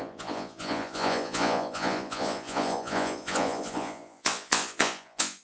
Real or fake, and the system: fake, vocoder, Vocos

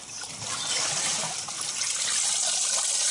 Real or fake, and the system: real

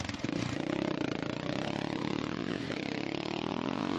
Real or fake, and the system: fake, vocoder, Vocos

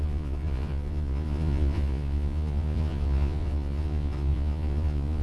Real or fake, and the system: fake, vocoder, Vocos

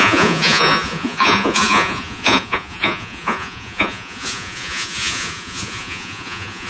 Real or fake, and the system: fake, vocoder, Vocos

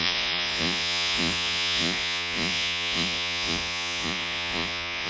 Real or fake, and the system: fake, vocoder, Vocos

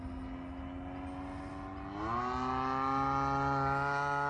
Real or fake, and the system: real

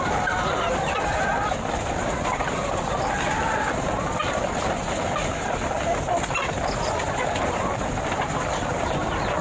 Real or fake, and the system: real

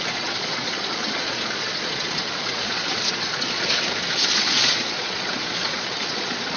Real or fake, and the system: fake, vocoder, Vocos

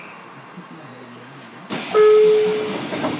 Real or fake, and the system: real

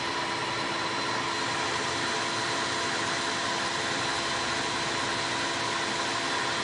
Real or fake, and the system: real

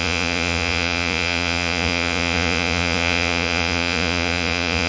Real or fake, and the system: fake, vocoder, Vocos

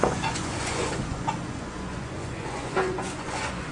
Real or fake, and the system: fake, vocoder, Vocos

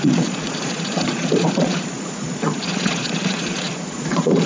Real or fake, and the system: fake, vocoder, Vocos